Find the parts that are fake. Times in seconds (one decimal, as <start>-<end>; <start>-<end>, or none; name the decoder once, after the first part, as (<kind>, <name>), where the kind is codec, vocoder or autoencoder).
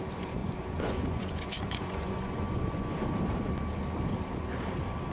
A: 0.4-2.9 (vocoder, Vocos)